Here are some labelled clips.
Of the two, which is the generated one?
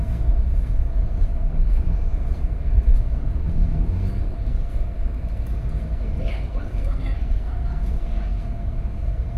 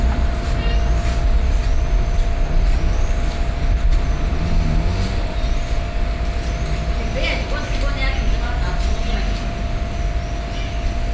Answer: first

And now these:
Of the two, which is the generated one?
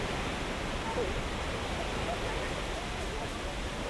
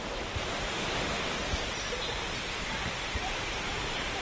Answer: second